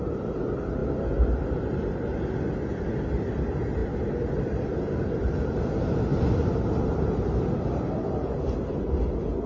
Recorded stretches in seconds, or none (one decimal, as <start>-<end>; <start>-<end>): 0.0-9.5

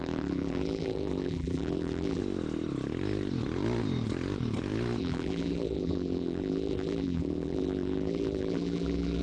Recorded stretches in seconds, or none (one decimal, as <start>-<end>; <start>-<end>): 2.2-5.0